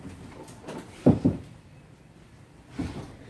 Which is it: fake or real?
fake